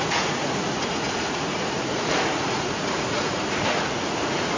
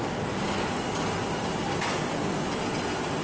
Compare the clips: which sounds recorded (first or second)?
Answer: second